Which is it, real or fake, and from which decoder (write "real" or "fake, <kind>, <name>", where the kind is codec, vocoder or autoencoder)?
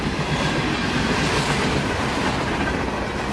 real